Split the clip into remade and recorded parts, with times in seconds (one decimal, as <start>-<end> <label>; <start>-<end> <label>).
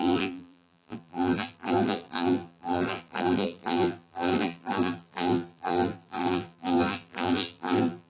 0.0-8.1 remade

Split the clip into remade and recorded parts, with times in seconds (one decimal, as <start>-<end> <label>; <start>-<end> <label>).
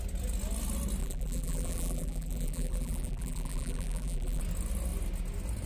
0.0-1.0 recorded; 1.0-4.4 remade; 4.4-5.7 recorded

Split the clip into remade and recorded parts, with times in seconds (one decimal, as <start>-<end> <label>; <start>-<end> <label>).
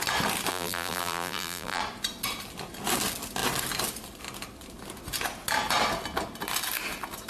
0.0-0.5 recorded; 0.5-1.8 remade; 1.8-7.3 recorded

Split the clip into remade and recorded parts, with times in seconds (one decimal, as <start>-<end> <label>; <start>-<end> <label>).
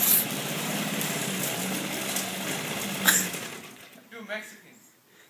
0.0-0.4 recorded; 0.4-1.6 remade; 1.6-5.3 recorded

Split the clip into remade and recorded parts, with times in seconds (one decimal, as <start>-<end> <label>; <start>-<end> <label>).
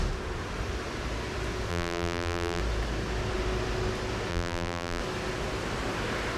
0.0-1.7 recorded; 1.7-2.6 remade; 2.6-4.3 recorded; 4.3-5.0 remade; 5.0-6.4 recorded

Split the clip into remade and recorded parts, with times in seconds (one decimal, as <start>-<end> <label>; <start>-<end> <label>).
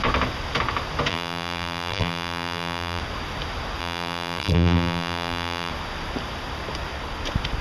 0.0-1.1 recorded; 1.1-3.0 remade; 3.0-3.8 recorded; 3.8-5.7 remade; 5.7-7.6 recorded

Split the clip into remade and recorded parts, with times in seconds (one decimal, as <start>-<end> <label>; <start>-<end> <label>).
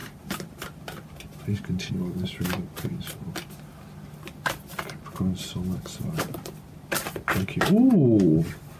0.0-1.9 remade; 1.9-8.8 recorded